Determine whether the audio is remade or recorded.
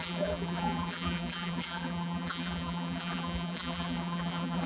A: remade